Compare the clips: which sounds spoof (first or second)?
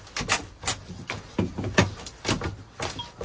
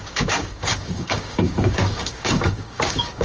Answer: second